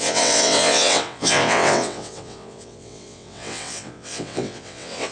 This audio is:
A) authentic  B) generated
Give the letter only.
B